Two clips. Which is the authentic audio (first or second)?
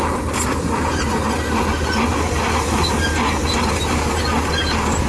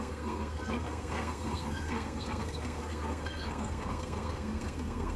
first